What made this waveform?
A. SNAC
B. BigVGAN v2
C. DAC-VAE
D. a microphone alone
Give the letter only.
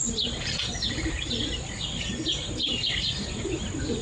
D